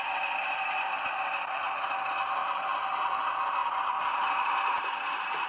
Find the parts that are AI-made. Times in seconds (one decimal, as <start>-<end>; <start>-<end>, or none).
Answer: 2.4-3.1; 3.6-4.2